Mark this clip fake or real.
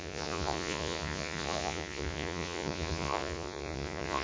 fake